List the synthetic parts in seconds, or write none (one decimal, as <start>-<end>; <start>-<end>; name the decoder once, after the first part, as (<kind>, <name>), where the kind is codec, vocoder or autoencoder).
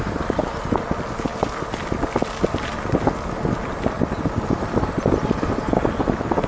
none